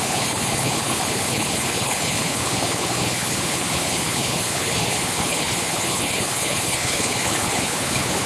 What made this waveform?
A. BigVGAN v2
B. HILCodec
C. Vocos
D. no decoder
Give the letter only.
B